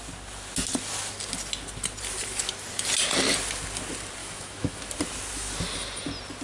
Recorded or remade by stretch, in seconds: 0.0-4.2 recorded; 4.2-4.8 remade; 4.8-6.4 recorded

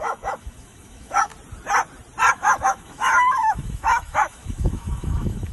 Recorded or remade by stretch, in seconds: 0.0-1.3 remade; 1.3-2.3 recorded; 2.3-5.5 remade